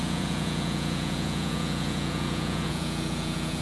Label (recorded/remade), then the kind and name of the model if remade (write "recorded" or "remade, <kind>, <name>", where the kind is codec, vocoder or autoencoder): remade, vocoder, Vocos